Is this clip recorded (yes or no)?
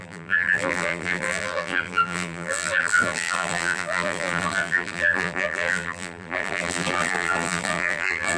no